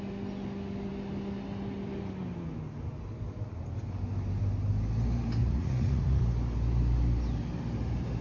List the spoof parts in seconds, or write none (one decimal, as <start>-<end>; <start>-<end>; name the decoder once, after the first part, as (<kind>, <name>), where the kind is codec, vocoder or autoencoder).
5.4-6.2 (vocoder, Vocos)